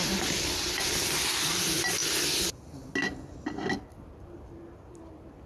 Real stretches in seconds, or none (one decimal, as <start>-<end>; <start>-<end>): 0.0-5.5